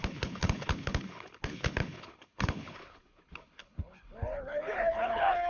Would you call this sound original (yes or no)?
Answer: no